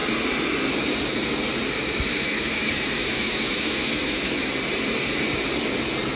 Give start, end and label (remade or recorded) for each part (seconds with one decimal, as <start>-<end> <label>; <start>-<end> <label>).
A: 0.0-2.1 recorded; 2.1-4.5 remade; 4.5-6.2 recorded